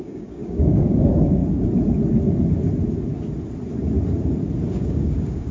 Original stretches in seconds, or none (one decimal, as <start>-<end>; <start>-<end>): 1.4-4.7